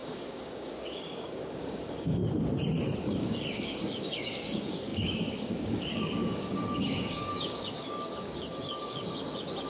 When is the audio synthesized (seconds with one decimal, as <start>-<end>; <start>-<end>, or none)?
0.0-2.2; 3.0-9.7